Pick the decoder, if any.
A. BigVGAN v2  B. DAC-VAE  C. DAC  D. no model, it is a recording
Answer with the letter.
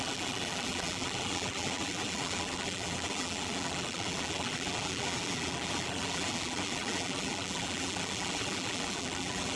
A